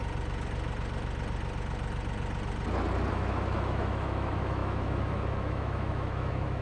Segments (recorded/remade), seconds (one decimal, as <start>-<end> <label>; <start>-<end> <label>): 0.0-3.1 recorded; 3.1-6.6 remade